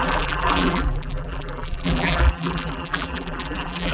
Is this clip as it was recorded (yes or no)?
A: no